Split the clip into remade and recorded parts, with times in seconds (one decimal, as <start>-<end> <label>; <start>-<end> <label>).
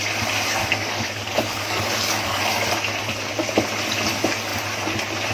0.0-0.6 recorded; 0.6-2.4 remade; 2.4-5.3 recorded